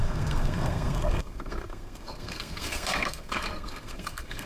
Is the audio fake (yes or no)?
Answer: yes